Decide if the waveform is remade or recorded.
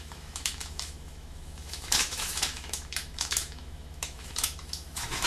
remade